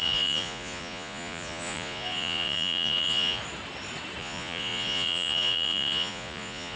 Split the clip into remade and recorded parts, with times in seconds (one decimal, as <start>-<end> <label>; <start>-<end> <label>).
0.0-3.4 remade; 3.4-4.2 recorded; 4.2-6.8 remade